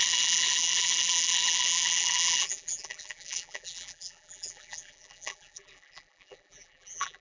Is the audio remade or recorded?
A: remade